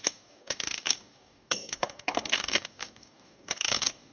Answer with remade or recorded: remade